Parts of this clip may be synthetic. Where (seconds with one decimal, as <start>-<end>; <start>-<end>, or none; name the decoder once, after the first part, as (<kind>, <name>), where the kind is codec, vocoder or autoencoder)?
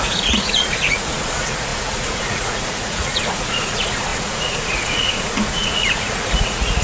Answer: 0.0-6.8 (vocoder, Vocos)